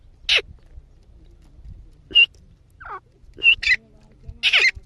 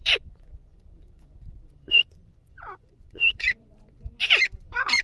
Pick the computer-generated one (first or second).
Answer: second